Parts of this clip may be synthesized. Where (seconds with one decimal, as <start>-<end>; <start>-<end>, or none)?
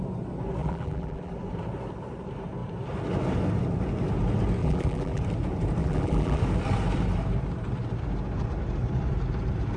0.6-1.3; 4.6-5.2; 5.8-6.4